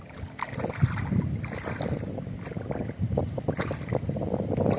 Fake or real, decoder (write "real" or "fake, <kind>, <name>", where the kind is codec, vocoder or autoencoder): real